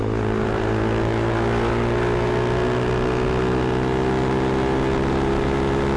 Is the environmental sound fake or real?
real